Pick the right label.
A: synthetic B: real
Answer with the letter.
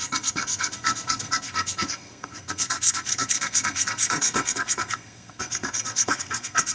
A